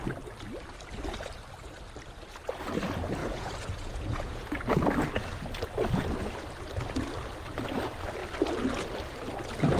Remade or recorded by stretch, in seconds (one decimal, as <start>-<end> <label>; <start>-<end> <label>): 0.0-3.2 recorded; 3.2-4.9 remade; 4.9-9.8 recorded